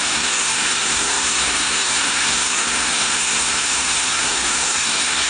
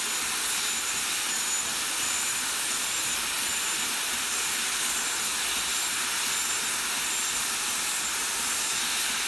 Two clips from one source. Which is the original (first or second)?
second